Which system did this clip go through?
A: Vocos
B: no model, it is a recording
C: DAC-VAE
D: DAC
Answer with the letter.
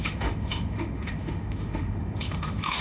C